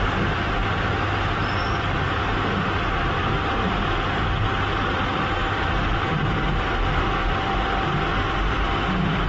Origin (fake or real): fake